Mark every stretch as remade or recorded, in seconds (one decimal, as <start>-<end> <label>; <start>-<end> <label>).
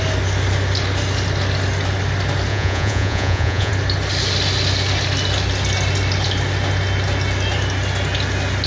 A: 0.0-2.5 recorded; 2.5-3.7 remade; 3.7-8.7 recorded